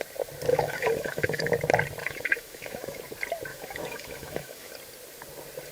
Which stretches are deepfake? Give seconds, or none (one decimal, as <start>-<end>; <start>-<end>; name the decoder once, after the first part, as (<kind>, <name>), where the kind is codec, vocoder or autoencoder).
0.5-1.5 (autoencoder, DAC-VAE); 2.0-3.0; 3.5-4.7